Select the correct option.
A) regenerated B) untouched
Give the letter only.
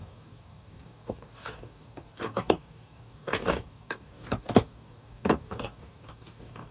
A